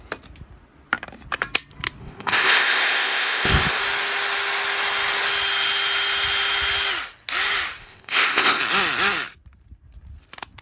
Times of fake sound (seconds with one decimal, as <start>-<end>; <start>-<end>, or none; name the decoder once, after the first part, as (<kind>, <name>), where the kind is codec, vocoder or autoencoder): 2.0-3.8 (codec, ZipCodec); 7.8-8.6